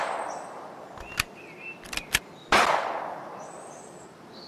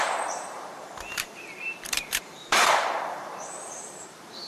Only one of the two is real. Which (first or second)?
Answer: first